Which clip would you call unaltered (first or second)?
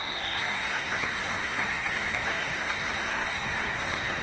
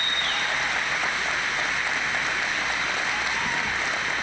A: second